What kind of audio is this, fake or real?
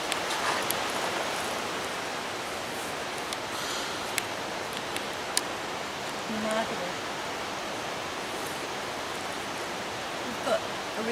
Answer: real